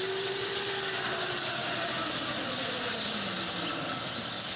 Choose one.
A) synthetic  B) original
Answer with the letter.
B